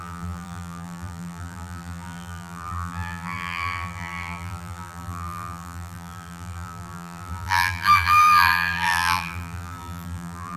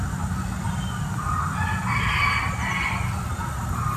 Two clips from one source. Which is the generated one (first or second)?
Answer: first